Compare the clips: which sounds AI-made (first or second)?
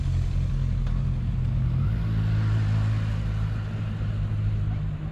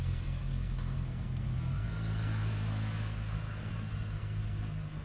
second